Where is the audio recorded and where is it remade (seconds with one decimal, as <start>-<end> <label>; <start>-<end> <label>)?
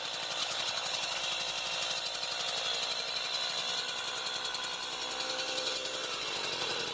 0.0-0.4 recorded; 0.4-1.2 remade; 1.2-6.9 recorded